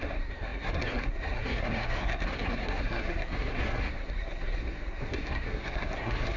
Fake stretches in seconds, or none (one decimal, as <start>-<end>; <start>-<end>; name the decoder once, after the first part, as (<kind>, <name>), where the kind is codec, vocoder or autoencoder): 0.0-6.4 (codec, SNAC)